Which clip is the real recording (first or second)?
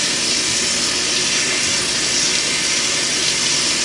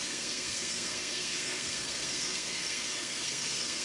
first